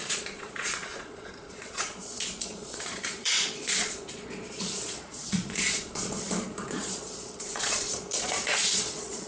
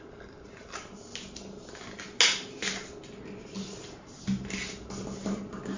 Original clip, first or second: second